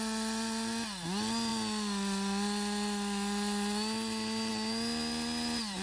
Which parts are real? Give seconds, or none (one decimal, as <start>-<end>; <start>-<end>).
0.0-5.8